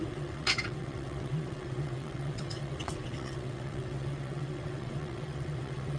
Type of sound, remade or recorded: remade